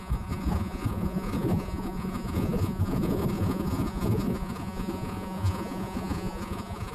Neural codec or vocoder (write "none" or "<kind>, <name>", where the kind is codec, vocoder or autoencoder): vocoder, Vocos